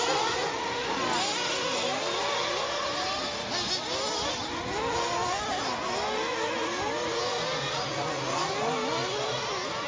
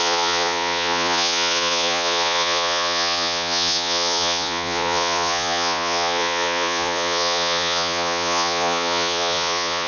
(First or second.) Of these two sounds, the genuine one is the first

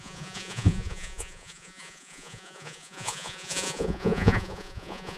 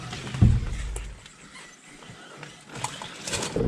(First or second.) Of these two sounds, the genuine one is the second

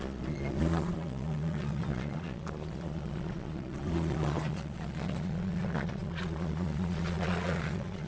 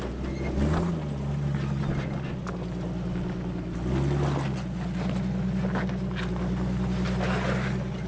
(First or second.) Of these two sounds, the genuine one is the second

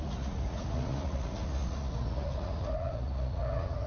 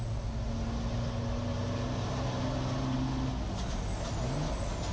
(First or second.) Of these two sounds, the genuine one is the second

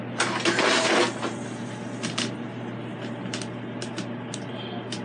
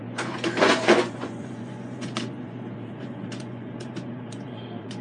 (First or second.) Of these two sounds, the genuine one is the first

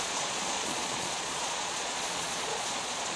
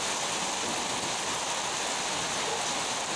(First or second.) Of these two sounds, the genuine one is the second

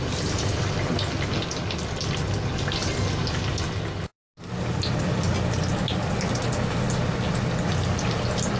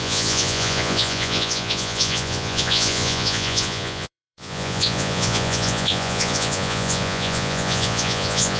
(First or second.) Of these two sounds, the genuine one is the first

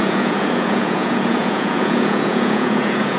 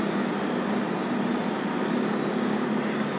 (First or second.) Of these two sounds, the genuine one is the second